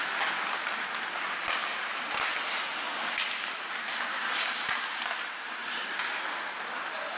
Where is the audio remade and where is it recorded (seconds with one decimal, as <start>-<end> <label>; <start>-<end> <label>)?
0.0-7.2 recorded